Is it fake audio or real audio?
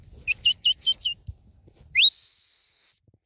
real